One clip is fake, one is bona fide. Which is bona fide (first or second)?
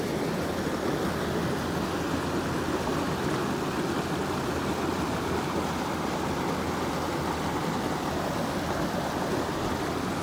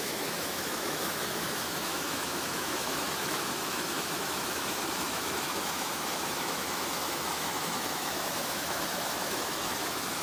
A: first